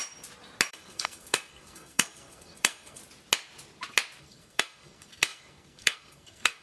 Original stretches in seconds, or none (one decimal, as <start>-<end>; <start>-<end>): 0.0-0.7; 3.0-4.2